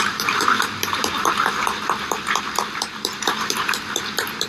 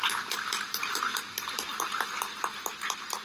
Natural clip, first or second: second